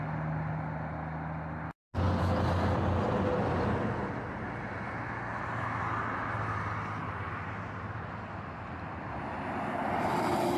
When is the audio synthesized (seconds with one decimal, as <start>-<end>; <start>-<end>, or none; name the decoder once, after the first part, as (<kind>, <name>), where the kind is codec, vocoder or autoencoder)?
none